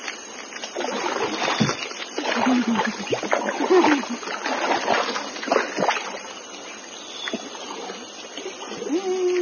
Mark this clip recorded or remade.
recorded